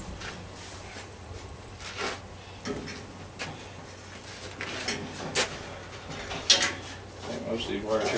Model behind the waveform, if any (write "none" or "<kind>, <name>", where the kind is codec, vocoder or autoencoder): none